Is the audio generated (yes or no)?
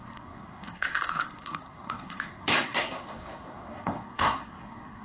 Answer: yes